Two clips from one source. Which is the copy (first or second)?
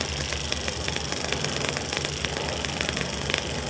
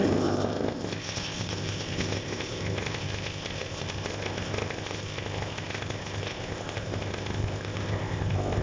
second